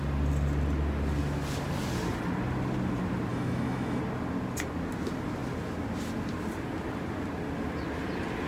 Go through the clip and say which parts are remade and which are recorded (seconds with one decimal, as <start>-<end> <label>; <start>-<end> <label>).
0.0-3.3 recorded; 3.3-4.0 remade; 4.0-8.5 recorded